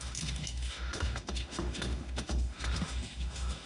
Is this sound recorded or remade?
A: remade